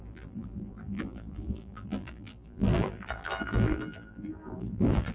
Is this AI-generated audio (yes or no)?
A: yes